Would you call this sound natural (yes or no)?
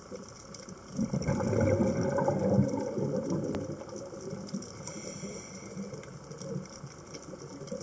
yes